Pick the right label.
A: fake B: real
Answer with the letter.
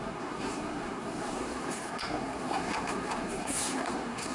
A